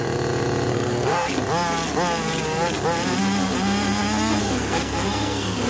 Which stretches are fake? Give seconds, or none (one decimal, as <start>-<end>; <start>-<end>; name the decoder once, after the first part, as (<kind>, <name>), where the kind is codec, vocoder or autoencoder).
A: 0.7-1.3 (codec, SNAC); 4.4-5.7

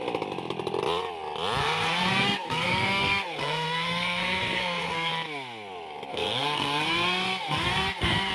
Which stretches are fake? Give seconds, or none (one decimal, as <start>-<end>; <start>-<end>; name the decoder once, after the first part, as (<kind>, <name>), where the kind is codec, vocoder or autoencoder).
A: 1.6-5.1 (codec, SNAC); 6.1-8.3

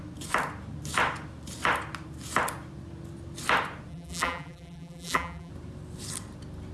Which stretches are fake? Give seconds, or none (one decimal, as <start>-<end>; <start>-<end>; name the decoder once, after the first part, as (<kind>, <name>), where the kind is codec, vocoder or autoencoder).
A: 3.9-5.5 (vocoder, BigVGAN v2)

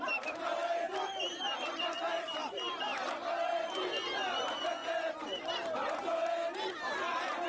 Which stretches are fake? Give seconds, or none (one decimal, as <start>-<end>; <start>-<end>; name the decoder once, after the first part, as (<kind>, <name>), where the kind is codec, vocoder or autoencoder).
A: none

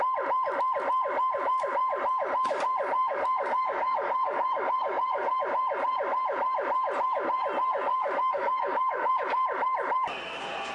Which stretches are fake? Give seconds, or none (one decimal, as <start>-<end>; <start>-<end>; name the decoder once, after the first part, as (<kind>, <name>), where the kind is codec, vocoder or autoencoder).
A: 3.0-5.4 (codec, DAC); 7.9-9.1

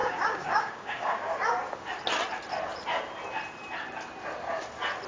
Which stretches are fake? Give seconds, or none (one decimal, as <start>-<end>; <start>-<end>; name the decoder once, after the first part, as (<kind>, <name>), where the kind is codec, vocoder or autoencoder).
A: 0.0-1.3 (codec, DAC)

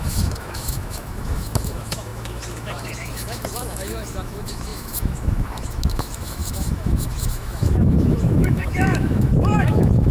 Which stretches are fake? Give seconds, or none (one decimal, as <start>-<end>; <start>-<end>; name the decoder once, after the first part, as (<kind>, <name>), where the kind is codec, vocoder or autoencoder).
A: 0.0-10.1 (autoencoder, DAC-VAE)

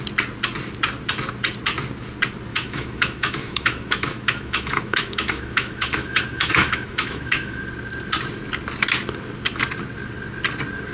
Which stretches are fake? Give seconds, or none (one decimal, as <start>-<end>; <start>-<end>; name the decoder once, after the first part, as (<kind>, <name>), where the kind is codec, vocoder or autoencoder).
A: 2.5-7.6 (autoencoder, DAC-VAE)